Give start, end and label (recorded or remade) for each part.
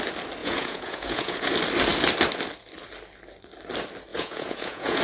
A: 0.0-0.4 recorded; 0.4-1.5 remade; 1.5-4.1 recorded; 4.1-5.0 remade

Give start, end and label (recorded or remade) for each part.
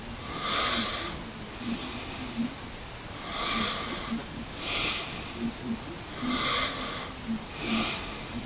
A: 0.0-4.2 recorded; 4.2-4.8 remade; 4.8-8.5 recorded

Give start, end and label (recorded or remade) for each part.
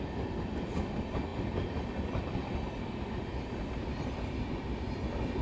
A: 0.0-5.4 recorded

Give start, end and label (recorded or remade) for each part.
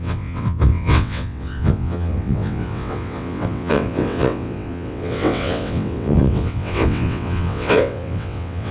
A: 0.0-8.7 remade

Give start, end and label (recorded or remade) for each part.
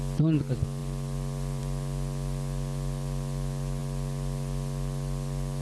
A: 0.0-5.6 recorded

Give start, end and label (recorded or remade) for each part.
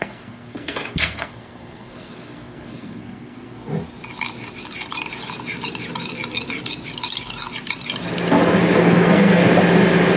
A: 0.0-3.7 remade; 3.7-8.8 recorded; 8.8-9.4 remade; 9.4-10.2 recorded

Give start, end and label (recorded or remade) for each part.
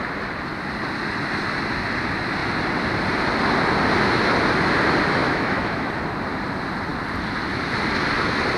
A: 0.0-5.2 recorded; 5.2-5.9 remade; 5.9-8.6 recorded